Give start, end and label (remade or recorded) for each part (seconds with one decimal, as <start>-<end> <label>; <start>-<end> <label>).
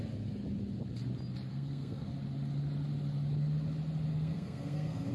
0.0-1.5 recorded; 1.5-2.1 remade; 2.1-4.1 recorded; 4.1-5.1 remade